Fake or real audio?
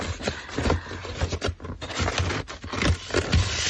real